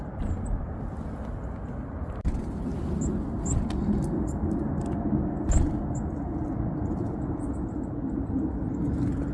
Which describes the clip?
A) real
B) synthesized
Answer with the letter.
A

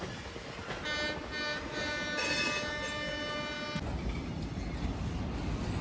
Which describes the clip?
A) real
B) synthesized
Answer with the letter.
A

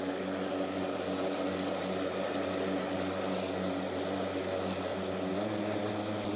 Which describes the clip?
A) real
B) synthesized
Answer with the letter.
A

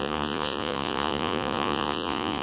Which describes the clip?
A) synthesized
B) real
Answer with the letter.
A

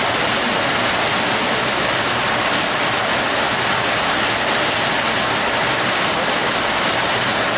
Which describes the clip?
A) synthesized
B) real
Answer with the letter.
B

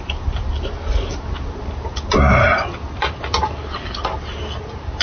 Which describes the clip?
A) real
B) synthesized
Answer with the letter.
A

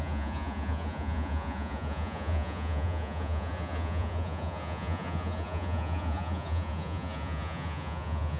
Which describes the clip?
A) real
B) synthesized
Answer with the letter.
B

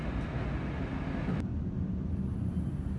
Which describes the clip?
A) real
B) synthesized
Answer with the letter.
A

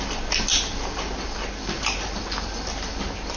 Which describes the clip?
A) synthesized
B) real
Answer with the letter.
B